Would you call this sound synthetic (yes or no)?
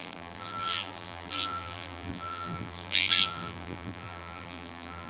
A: yes